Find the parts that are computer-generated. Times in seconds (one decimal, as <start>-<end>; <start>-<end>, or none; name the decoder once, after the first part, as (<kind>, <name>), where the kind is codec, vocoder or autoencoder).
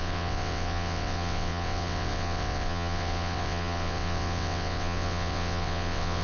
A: 0.0-6.2 (vocoder, WaveNeXt)